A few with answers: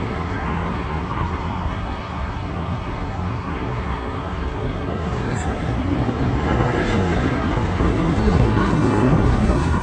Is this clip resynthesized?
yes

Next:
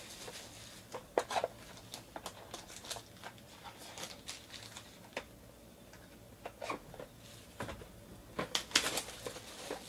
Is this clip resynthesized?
no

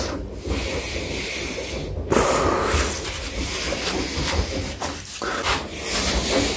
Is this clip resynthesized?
no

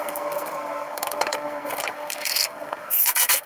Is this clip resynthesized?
yes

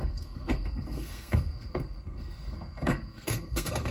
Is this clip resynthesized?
yes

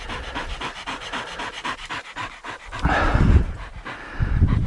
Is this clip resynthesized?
no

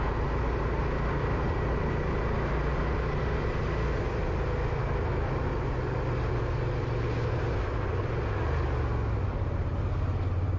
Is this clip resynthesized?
no